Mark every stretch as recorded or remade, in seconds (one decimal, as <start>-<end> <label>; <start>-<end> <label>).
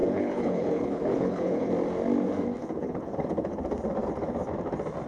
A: 0.0-1.7 remade; 1.7-2.6 recorded; 2.6-3.6 remade; 3.6-5.1 recorded